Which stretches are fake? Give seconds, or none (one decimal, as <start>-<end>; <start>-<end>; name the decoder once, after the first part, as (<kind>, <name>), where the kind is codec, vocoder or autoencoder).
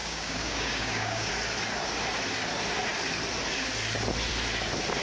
0.0-1.3 (codec, DAC)